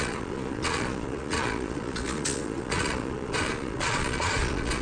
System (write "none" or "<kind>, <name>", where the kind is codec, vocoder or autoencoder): vocoder, Vocos